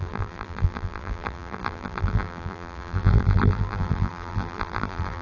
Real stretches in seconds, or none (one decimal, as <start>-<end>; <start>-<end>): none